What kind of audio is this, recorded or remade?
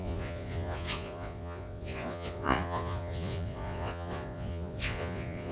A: remade